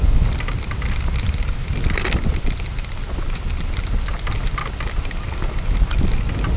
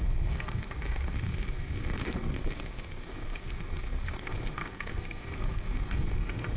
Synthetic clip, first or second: second